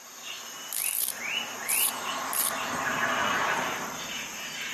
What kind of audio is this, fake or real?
fake